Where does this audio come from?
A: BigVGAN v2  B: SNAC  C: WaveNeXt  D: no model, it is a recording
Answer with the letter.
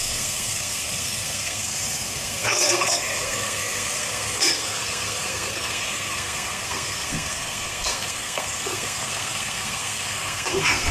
B